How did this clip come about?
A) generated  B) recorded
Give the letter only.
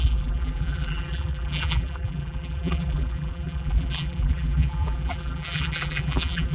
A